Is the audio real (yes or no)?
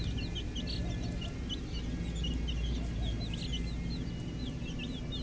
yes